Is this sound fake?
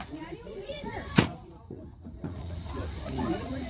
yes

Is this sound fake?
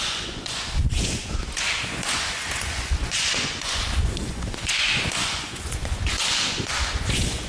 yes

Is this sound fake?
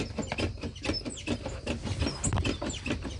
no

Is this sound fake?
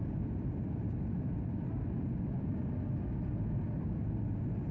no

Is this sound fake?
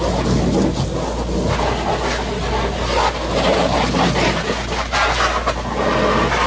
no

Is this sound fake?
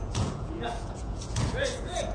yes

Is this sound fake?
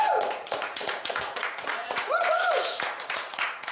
yes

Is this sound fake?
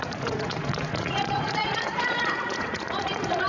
yes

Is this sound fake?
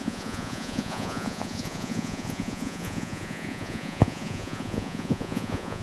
yes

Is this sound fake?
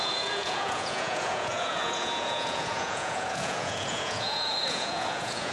yes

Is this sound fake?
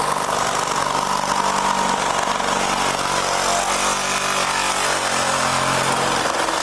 no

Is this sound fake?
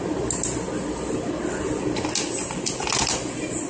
no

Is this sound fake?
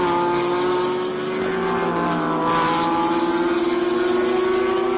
no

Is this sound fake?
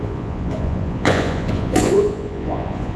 yes